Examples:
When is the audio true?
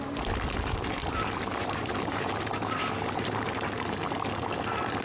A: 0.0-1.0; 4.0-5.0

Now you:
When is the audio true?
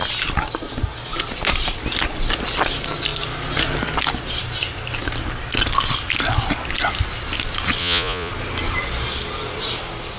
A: 0.0-7.8; 8.3-10.2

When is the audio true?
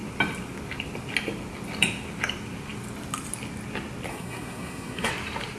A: 0.0-4.1; 5.1-5.6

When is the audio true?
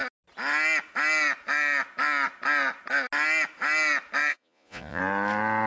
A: 0.0-4.3; 5.0-5.7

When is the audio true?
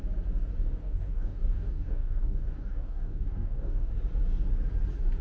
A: 0.0-0.8; 3.9-5.2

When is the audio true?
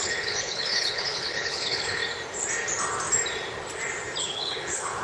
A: 2.0-4.2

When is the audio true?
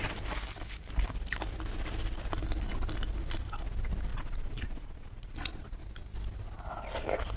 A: 0.0-4.1; 5.8-7.4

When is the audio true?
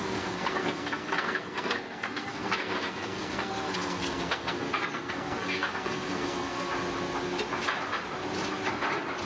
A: 6.7-9.3